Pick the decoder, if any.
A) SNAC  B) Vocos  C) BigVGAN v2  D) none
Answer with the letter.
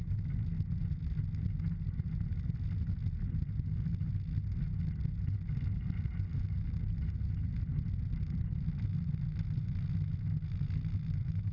D